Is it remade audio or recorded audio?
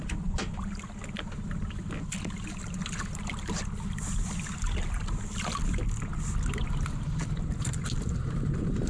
recorded